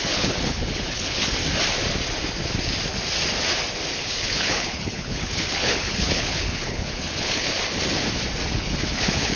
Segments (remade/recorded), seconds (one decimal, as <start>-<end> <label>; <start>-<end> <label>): 0.0-1.4 remade; 1.4-4.0 recorded; 4.0-7.6 remade; 7.6-8.5 recorded; 8.5-9.4 remade